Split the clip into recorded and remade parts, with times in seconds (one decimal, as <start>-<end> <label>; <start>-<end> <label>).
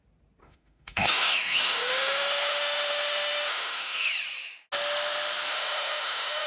0.0-0.4 recorded; 0.4-4.1 remade; 4.1-5.5 recorded; 5.5-6.5 remade